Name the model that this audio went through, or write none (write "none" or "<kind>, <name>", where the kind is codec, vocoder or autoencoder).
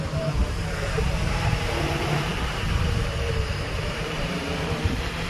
vocoder, BigVGAN v2